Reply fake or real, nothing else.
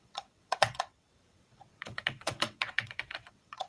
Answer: fake